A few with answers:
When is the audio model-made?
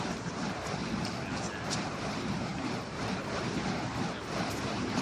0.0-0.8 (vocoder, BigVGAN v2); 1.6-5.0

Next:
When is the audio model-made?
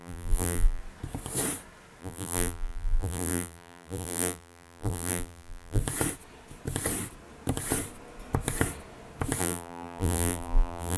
0.0-0.8 (vocoder, BigVGAN v2); 2.0-5.8; 9.4-11.0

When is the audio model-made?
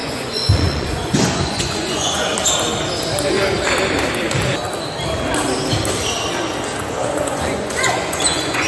0.0-2.3 (vocoder, Vocos); 6.8-8.7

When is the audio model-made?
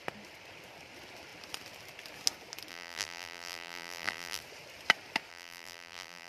2.7-4.4 (vocoder, BigVGAN v2); 5.3-6.3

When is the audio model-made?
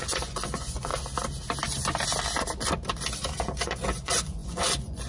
0.0-0.9 (vocoder, Vocos); 3.4-5.1